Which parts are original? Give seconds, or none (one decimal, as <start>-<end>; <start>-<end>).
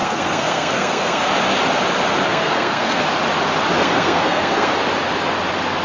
1.3-2.3; 3.0-3.8; 4.7-5.8